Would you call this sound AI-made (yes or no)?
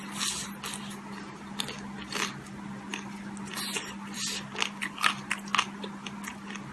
no